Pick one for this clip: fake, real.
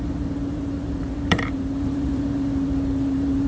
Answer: fake